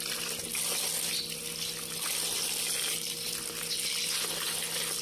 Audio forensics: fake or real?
real